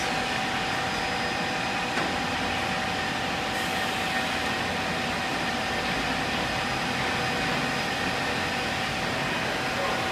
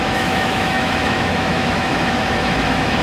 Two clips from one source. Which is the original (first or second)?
first